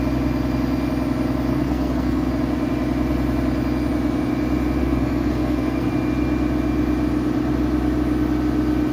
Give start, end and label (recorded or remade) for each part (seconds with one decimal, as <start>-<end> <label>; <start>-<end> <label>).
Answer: 0.0-1.5 recorded; 1.5-2.3 remade; 2.3-4.8 recorded; 4.8-5.9 remade; 5.9-8.9 recorded